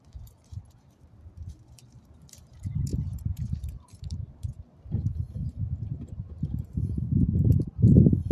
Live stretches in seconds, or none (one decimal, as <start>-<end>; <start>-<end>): none